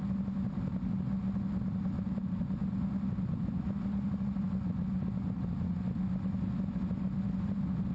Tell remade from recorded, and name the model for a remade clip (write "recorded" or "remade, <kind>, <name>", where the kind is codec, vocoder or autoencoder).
recorded